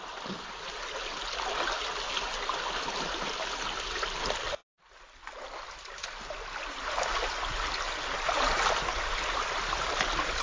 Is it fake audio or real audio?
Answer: real